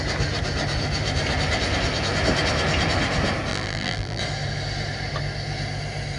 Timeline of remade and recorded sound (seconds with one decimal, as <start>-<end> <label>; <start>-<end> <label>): 0.0-3.5 recorded; 3.5-4.2 remade; 4.2-6.2 recorded